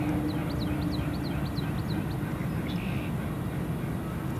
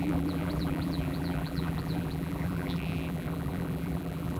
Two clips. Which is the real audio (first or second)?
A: first